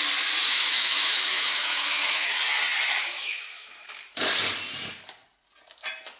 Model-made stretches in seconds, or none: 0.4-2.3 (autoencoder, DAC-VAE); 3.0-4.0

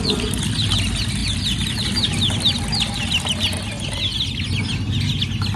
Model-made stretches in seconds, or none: none

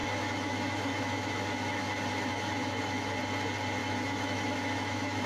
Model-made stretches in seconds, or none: 0.0-3.2 (autoencoder, DAC-VAE); 3.8-5.3

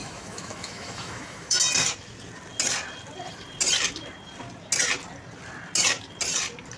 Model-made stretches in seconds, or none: 0.0-1.6 (autoencoder, DAC-VAE)

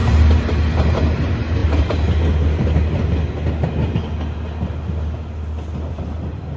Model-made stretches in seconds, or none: none

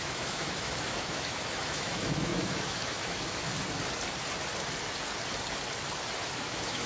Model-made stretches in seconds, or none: 0.0-3.5 (autoencoder, DAC-VAE); 6.3-6.9